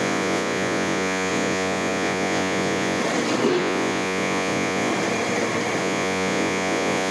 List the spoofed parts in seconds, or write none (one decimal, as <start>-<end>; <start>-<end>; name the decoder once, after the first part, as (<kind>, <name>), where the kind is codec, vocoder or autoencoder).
0.0-3.0 (vocoder, Vocos); 3.6-4.9; 5.8-7.1